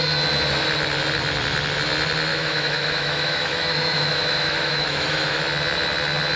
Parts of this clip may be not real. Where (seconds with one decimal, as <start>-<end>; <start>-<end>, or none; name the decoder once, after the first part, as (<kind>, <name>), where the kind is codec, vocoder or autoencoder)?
2.3-5.4 (autoencoder, DAC-VAE)